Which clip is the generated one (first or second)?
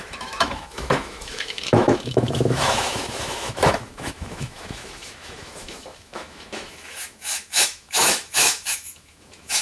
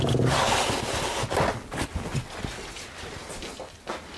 first